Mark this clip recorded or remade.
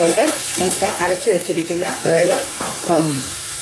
remade